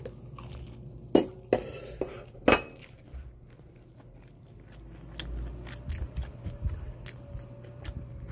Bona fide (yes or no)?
yes